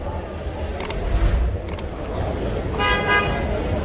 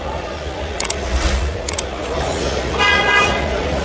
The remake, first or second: second